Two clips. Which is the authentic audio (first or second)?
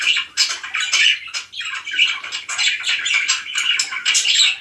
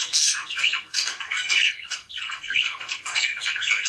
first